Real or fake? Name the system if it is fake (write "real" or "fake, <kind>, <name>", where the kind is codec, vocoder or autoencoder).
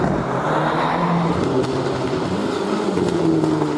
real